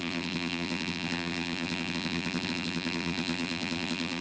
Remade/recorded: remade